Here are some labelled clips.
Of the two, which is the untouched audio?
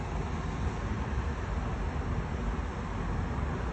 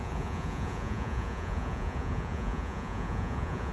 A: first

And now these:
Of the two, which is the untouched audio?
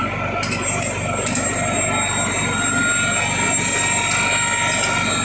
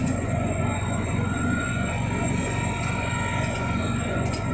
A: first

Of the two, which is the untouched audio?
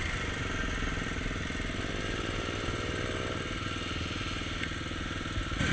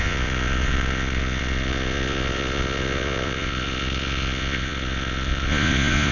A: first